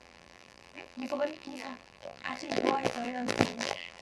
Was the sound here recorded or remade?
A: remade